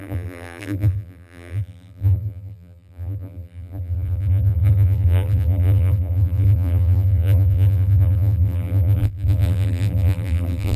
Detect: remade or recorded remade